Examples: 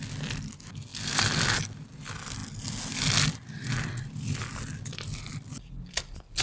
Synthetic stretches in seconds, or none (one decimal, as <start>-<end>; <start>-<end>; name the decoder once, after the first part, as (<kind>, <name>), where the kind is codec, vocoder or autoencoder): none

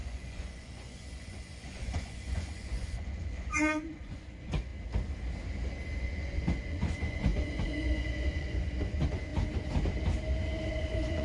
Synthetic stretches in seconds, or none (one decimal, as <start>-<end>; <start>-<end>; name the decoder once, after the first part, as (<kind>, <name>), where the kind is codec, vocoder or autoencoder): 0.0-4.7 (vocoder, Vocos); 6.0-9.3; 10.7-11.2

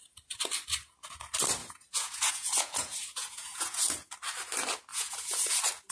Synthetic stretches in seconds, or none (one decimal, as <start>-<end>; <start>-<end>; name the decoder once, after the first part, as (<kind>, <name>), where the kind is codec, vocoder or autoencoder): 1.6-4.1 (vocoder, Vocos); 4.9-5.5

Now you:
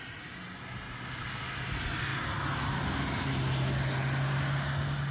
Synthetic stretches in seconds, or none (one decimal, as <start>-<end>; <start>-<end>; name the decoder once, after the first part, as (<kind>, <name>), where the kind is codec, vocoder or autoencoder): none

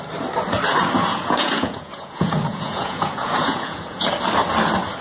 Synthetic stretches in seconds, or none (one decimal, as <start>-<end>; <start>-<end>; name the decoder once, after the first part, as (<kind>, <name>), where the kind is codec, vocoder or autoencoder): 1.1-4.1 (vocoder, Vocos)